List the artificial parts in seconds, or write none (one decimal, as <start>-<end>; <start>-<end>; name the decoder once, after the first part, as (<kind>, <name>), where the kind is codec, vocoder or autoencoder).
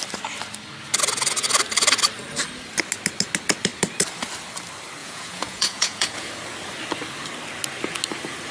5.0-6.3 (vocoder, Vocos)